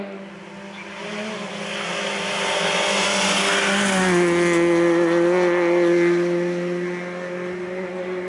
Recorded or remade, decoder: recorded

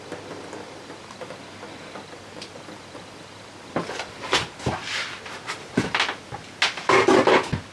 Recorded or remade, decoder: recorded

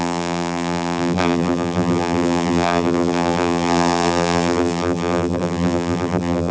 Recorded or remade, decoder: remade, vocoder, BigVGAN v2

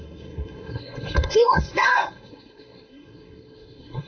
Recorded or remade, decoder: remade, codec, SNAC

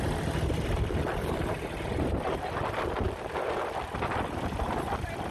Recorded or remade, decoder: recorded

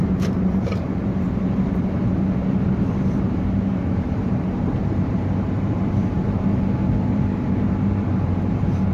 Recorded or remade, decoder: remade, vocoder, BigVGAN v2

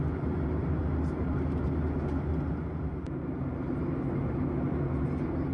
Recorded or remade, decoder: recorded